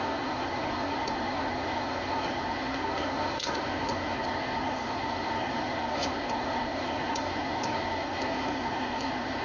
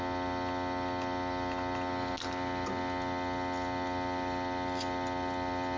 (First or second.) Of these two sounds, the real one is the second